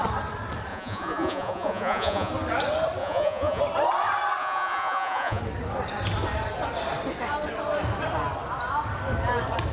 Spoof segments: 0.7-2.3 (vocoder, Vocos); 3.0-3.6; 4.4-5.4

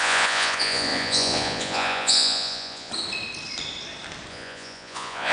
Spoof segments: 0.0-2.9 (vocoder, Vocos); 4.3-5.3

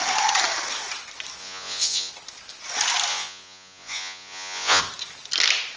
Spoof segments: 1.4-2.1 (vocoder, Vocos); 3.1-4.8

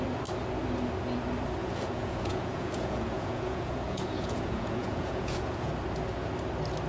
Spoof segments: 1.6-5.7 (vocoder, Vocos)

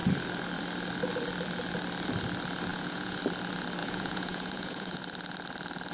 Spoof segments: 2.7-3.2 (vocoder, Vocos); 3.8-5.0

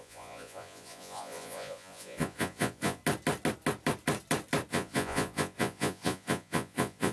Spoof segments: 0.0-3.0 (vocoder, Vocos); 4.7-7.1

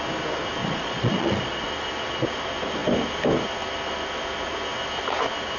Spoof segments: 0.6-1.6 (vocoder, Vocos)